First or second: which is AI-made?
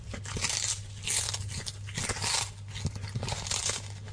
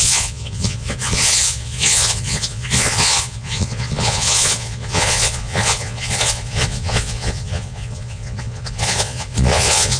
second